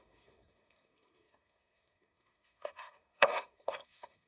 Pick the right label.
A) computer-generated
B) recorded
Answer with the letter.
A